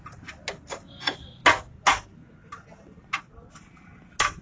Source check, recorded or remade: recorded